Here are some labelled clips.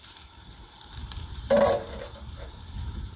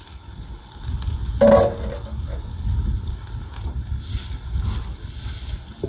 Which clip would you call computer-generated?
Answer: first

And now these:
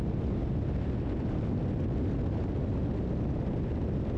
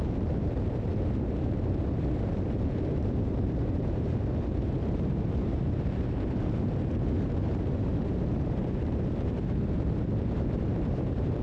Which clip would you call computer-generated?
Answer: second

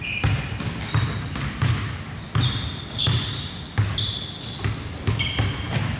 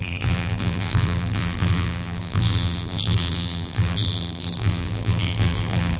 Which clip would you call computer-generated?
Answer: second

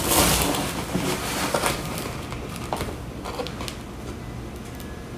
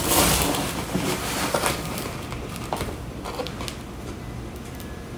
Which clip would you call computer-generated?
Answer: second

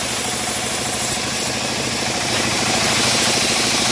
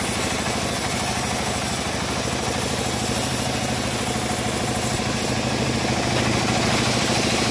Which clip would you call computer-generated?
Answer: first